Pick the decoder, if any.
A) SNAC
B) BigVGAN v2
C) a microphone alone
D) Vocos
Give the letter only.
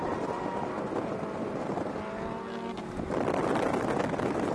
C